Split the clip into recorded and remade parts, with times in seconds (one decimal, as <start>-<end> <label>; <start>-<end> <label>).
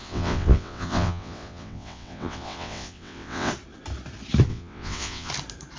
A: 0.0-3.5 remade; 3.5-4.5 recorded; 4.5-5.3 remade; 5.3-5.8 recorded